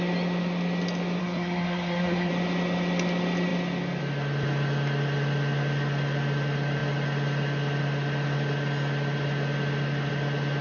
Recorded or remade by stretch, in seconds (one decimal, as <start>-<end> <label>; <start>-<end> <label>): 0.0-1.2 recorded; 1.2-2.3 remade; 2.3-10.6 recorded